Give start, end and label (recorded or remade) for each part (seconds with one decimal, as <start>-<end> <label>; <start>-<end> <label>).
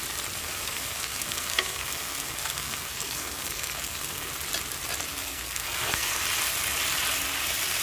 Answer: 0.0-0.4 recorded; 0.4-4.3 remade; 4.3-5.1 recorded; 5.1-6.2 remade; 6.2-7.8 recorded